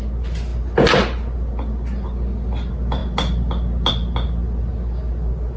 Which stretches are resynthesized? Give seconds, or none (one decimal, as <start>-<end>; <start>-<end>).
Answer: none